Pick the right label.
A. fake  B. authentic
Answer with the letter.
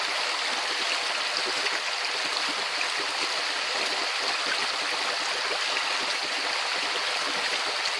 B